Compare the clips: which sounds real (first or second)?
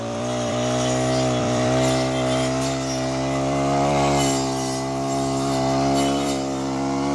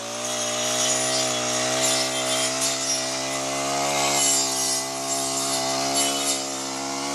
second